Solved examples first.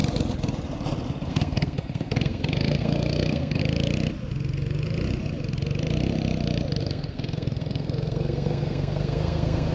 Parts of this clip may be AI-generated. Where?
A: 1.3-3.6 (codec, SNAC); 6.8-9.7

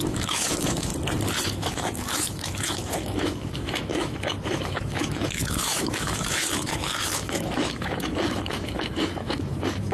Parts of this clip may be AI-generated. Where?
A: 0.0-0.9 (autoencoder, DAC-VAE); 1.5-9.9

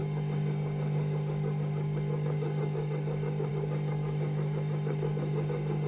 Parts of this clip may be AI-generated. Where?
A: 0.0-5.9 (codec, DAC)

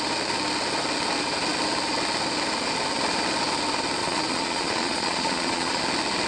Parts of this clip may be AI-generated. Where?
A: 4.0-5.8 (vocoder, Vocos)

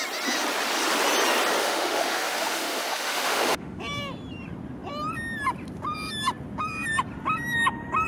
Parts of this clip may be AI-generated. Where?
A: 1.6-3.8 (autoencoder, DAC-VAE)